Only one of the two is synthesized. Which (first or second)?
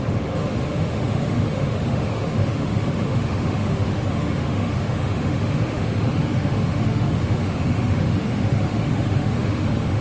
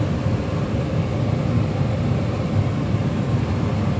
first